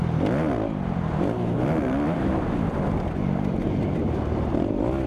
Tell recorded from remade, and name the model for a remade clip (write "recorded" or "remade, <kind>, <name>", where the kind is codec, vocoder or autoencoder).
recorded